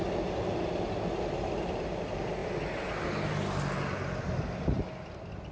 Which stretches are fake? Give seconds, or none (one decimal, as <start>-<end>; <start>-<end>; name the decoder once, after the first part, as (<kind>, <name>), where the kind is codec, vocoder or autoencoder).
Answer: none